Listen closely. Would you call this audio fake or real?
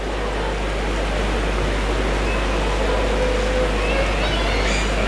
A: real